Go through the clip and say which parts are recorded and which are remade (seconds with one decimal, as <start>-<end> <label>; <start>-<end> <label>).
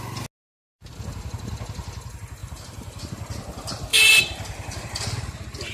0.0-2.4 recorded; 2.4-3.0 remade; 3.0-3.9 recorded; 3.9-5.0 remade; 5.0-5.7 recorded